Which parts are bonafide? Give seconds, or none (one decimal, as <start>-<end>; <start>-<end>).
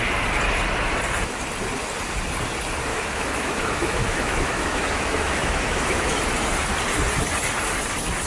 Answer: 0.0-2.9; 6.2-8.3